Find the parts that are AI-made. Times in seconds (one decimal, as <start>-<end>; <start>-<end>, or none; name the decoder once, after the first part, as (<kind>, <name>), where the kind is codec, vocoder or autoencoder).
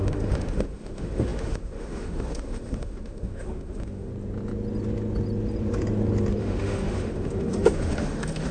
0.0-4.1 (autoencoder, DAC-VAE); 6.4-8.5